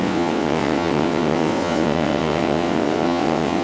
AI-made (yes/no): yes